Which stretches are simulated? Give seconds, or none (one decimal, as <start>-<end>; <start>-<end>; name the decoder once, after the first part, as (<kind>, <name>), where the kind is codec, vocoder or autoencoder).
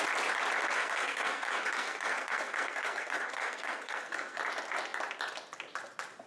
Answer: 0.6-4.4 (codec, SNAC)